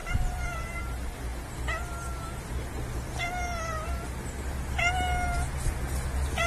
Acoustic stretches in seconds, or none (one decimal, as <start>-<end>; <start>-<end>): 0.8-6.5